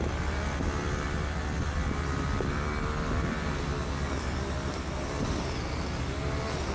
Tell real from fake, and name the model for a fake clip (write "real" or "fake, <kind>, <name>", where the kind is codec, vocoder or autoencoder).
real